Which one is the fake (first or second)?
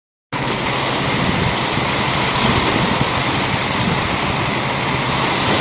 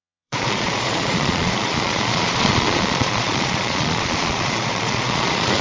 second